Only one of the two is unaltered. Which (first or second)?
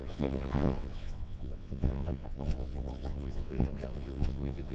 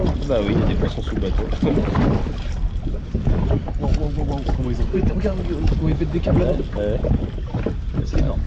second